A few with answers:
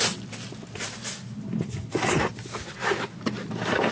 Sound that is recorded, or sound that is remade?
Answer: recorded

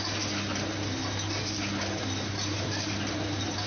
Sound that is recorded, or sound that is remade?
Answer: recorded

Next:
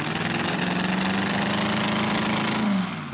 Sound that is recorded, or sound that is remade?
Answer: recorded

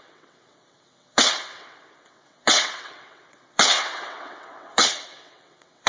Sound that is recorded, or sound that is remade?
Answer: remade